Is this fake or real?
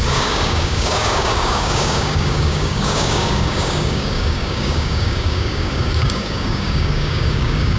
fake